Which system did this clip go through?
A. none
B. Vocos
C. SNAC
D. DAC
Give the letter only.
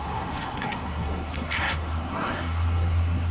C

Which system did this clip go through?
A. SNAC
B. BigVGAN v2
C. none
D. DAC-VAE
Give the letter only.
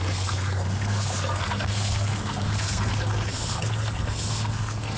A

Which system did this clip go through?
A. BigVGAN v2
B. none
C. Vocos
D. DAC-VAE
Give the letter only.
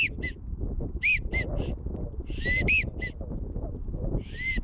B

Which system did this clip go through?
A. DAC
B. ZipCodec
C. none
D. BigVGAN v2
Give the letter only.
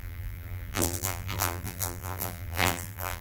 D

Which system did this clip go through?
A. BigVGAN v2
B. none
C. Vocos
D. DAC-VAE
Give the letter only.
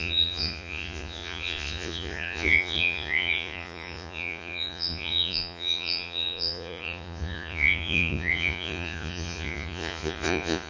C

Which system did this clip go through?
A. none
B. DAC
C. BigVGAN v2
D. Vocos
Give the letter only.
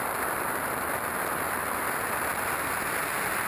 A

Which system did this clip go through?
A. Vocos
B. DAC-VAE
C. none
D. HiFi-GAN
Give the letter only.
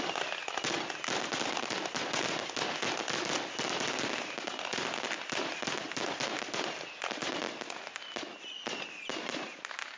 C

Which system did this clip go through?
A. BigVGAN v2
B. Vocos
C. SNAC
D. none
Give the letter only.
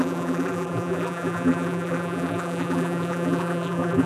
A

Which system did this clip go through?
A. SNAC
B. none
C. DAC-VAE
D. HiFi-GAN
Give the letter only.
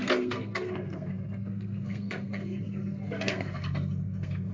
A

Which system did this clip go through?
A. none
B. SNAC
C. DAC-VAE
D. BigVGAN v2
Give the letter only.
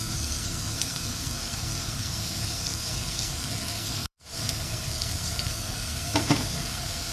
B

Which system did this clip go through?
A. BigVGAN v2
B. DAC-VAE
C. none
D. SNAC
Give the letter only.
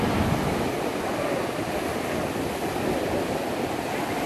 C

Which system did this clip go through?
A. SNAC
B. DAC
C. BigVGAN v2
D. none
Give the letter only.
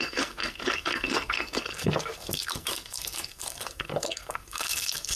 A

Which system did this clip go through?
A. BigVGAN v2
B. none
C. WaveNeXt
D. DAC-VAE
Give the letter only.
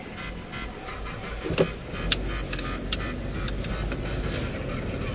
B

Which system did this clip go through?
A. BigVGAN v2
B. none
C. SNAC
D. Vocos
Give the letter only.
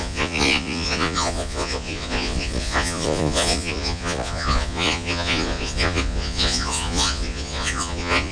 D